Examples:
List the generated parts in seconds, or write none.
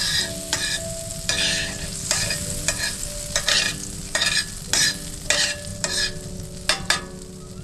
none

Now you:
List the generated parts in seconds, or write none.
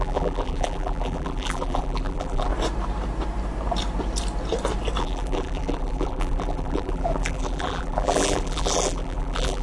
0.0-2.5 (vocoder, BigVGAN v2); 5.0-9.6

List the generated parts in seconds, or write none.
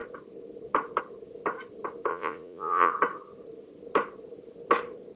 2.1-2.9 (vocoder, Vocos)